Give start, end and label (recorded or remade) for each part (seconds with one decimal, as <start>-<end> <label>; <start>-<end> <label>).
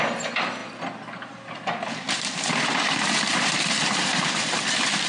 0.0-5.1 recorded